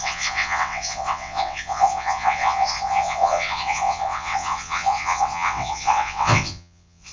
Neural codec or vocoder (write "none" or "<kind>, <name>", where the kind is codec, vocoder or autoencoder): vocoder, WaveNeXt